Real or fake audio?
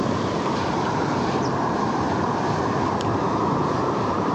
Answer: fake